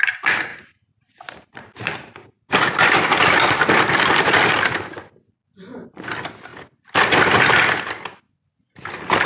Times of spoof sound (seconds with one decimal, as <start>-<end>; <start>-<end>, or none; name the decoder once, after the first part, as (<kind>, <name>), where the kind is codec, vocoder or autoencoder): 0.5-2.5 (vocoder, BigVGAN v2)